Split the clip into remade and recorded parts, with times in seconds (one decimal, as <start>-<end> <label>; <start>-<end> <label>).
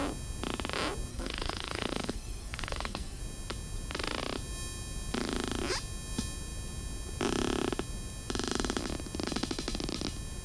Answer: 0.0-1.1 recorded; 1.1-3.2 remade; 3.2-10.4 recorded